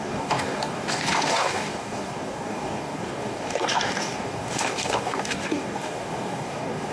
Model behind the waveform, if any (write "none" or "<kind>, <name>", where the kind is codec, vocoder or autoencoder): codec, DAC